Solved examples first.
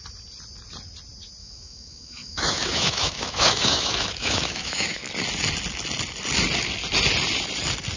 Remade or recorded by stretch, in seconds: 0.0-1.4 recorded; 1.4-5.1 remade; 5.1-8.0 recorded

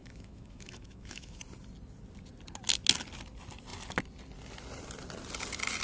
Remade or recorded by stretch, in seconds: 0.0-1.4 remade; 1.4-5.8 recorded

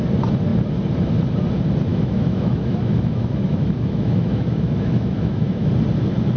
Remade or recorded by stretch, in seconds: 0.0-1.9 recorded; 1.9-5.7 remade; 5.7-6.4 recorded